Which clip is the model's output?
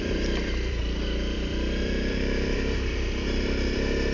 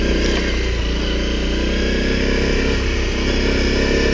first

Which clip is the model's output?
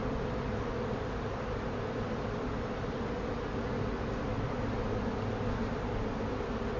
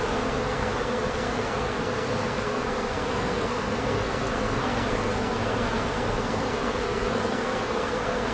second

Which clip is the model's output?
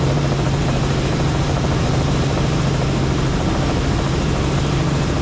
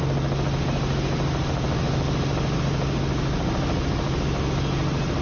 first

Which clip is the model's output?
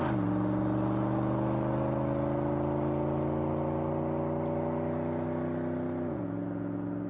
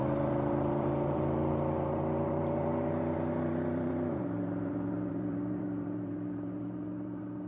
second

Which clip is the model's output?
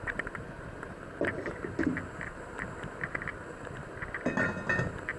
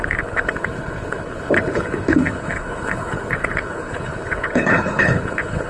second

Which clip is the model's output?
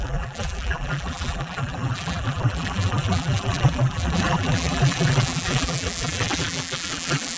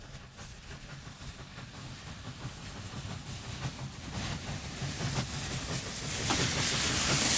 first